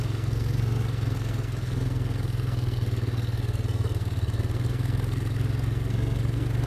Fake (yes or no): yes